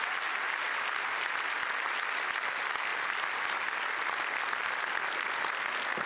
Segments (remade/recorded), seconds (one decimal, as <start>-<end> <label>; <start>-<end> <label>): 0.0-6.1 recorded